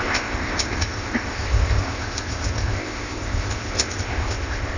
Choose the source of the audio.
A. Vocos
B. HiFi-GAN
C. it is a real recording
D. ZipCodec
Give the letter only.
D